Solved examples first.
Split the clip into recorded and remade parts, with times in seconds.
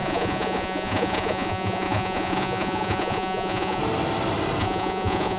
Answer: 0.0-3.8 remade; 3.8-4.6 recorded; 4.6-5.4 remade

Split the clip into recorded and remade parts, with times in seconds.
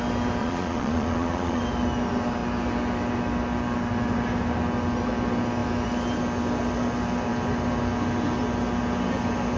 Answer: 0.0-0.4 recorded; 0.4-1.6 remade; 1.6-9.6 recorded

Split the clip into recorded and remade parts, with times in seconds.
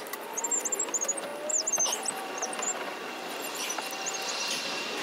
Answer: 0.0-5.0 recorded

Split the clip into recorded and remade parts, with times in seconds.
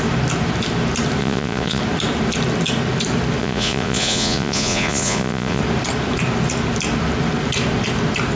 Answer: 0.0-1.2 recorded; 1.2-1.8 remade; 1.8-3.4 recorded; 3.4-5.6 remade; 5.6-8.4 recorded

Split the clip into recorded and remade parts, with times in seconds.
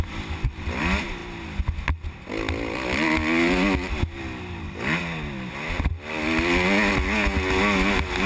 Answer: 0.0-8.3 recorded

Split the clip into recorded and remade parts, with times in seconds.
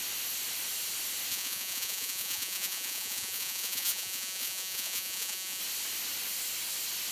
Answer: 0.0-1.3 recorded; 1.3-5.6 remade; 5.6-7.1 recorded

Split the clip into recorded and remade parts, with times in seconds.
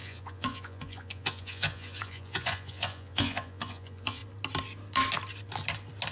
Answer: 0.0-4.2 remade; 4.2-6.1 recorded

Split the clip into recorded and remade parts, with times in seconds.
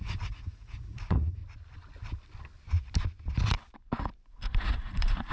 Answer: 0.0-1.4 remade; 1.4-4.6 recorded; 4.6-5.3 remade